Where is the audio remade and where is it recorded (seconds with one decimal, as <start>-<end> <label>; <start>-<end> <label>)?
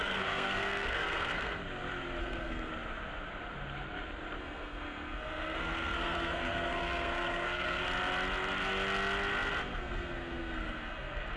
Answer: 0.0-1.6 remade; 1.6-2.2 recorded; 2.2-2.7 remade; 2.7-4.4 recorded; 4.4-7.8 remade; 7.8-9.6 recorded; 9.6-11.4 remade